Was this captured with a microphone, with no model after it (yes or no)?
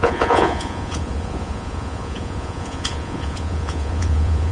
no